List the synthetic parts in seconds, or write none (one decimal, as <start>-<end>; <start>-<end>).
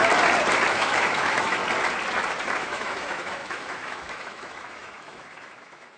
0.7-1.6; 2.6-6.0